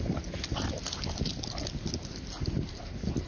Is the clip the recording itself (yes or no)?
yes